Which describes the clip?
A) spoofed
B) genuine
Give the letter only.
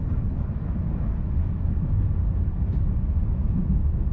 B